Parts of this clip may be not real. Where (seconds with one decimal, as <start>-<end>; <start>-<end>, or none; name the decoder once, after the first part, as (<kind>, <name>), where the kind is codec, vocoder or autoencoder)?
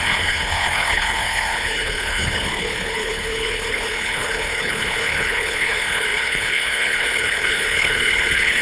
0.0-8.6 (codec, HILCodec)